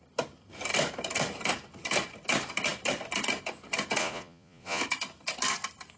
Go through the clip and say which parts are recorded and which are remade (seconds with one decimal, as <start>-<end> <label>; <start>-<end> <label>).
0.0-4.0 recorded; 4.0-4.8 remade; 4.8-6.0 recorded